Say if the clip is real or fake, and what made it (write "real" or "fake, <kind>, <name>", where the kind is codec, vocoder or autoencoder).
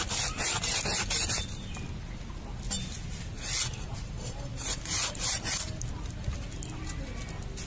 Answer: real